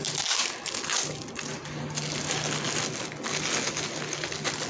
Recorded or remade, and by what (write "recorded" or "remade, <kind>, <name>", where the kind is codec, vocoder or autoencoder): recorded